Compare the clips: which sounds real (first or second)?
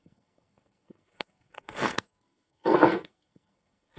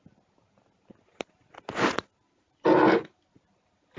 second